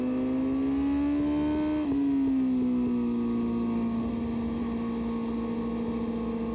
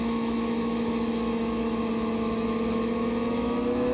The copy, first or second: second